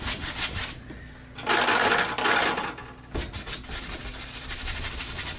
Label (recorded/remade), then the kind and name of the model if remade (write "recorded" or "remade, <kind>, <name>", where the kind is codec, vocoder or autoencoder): recorded